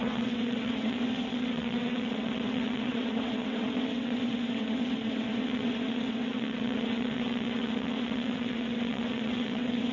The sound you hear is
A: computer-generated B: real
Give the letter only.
A